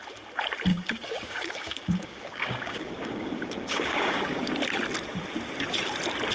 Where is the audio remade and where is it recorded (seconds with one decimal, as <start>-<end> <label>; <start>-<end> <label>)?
0.0-0.7 recorded; 0.7-4.5 remade; 4.5-6.3 recorded